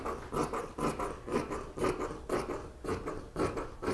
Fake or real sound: real